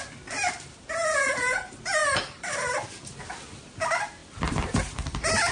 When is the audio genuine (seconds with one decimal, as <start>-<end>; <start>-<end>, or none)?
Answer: 0.0-1.0; 1.6-5.5